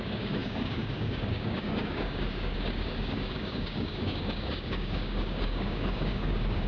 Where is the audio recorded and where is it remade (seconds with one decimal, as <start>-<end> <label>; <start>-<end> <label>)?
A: 0.0-6.7 remade